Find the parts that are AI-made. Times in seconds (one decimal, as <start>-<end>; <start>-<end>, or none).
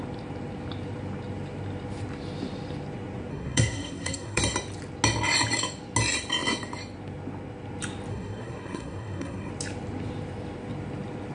3.3-4.4; 8.1-9.5